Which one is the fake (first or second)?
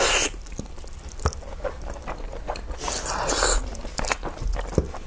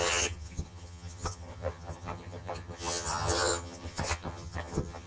second